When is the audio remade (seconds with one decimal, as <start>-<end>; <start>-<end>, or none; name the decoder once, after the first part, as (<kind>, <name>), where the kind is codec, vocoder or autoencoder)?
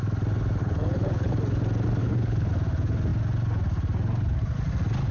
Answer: 0.6-1.3 (codec, HILCodec); 2.0-2.5